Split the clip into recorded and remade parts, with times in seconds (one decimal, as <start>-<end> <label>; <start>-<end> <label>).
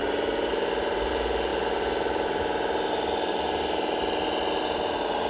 0.0-5.3 recorded